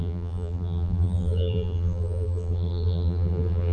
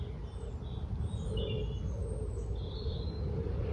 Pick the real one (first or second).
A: second